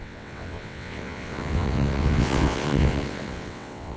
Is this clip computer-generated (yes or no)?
yes